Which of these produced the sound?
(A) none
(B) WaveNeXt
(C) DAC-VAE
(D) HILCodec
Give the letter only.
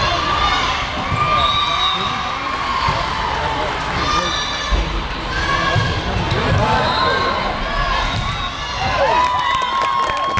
A